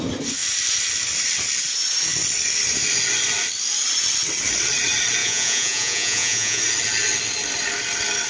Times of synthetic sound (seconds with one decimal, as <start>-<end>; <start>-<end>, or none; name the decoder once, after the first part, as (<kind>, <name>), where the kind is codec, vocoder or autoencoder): 5.2-6.6 (vocoder, Vocos)